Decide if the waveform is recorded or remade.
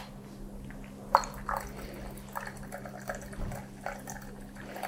recorded